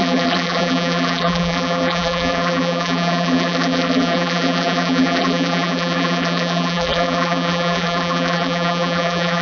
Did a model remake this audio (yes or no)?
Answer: yes